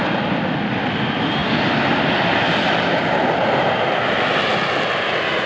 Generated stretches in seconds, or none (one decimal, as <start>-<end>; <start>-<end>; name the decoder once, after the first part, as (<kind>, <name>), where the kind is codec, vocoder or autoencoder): none